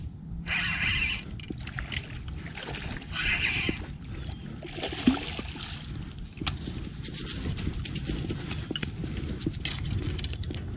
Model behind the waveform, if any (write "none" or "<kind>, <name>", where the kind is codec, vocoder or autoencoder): none